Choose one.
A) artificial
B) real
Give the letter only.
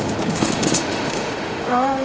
A